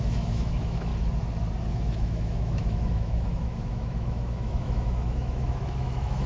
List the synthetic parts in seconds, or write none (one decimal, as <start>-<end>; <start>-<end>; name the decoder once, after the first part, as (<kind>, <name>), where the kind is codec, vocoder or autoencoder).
0.0-0.9 (autoencoder, DAC-VAE); 1.7-6.3